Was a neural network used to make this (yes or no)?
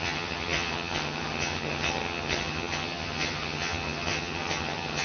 yes